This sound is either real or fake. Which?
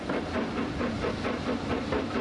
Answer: real